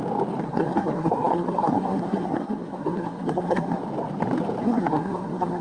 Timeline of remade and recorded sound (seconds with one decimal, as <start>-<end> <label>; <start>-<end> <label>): 0.0-0.4 recorded; 0.4-3.8 remade; 3.8-4.6 recorded; 4.6-5.6 remade